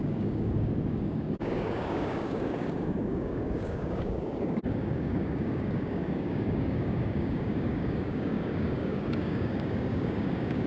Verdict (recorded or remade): remade